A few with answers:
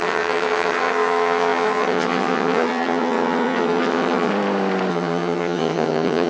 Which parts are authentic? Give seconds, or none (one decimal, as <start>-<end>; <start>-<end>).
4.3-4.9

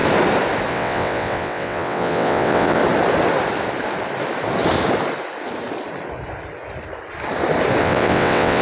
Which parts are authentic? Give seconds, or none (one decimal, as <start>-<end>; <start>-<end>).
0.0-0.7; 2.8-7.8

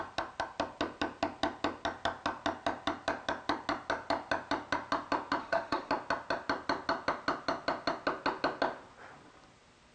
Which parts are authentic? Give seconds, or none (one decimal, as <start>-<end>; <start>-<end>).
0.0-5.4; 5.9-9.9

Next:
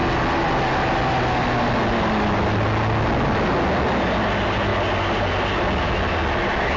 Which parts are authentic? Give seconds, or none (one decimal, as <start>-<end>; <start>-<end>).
0.0-6.8

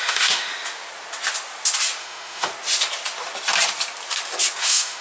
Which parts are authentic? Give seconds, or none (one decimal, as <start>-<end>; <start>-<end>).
0.5-2.0; 2.5-4.6